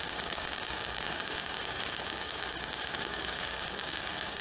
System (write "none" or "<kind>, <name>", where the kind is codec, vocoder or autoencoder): codec, DAC